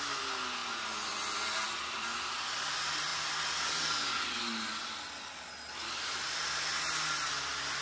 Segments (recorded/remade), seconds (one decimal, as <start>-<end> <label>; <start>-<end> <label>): 0.0-0.6 recorded; 0.6-2.3 remade; 2.3-7.8 recorded

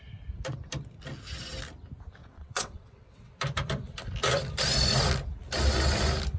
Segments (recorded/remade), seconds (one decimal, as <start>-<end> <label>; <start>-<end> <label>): 0.0-2.2 recorded; 2.2-3.3 remade; 3.3-6.4 recorded

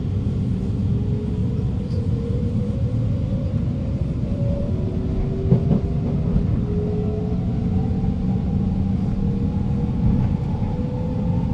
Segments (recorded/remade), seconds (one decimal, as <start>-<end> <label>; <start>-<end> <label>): 0.0-1.4 recorded; 1.4-5.0 remade; 5.0-11.5 recorded

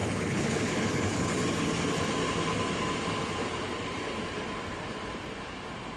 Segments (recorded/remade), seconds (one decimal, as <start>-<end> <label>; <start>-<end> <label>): 0.0-1.4 remade; 1.4-6.0 recorded

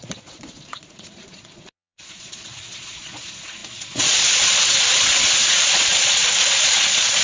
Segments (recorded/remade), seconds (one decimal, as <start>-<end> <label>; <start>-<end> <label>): 0.0-7.2 remade